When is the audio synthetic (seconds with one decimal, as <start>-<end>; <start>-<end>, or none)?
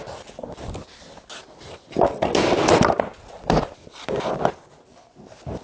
none